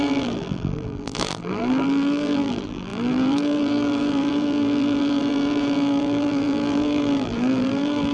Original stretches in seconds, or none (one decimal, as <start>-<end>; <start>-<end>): none